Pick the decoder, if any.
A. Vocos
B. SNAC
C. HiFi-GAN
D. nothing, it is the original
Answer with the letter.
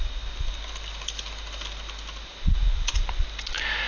D